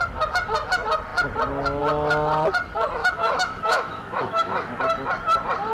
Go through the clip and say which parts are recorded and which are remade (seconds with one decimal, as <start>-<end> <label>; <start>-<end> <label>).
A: 0.0-3.0 recorded; 3.0-4.8 remade; 4.8-5.7 recorded